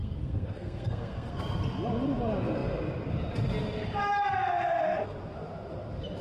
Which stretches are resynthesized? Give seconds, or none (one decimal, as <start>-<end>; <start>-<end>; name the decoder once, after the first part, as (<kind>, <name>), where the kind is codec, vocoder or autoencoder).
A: 0.0-1.4 (codec, SNAC)